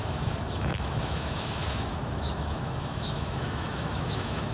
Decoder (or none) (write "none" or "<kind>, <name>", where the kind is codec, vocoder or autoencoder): autoencoder, DAC-VAE